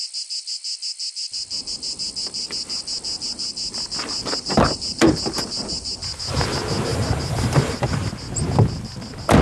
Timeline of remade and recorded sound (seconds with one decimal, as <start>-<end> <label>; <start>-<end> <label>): 0.0-6.9 recorded; 6.9-8.1 remade; 8.1-9.4 recorded